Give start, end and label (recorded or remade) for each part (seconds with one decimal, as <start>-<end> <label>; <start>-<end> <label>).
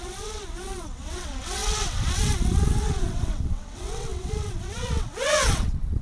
0.0-6.0 remade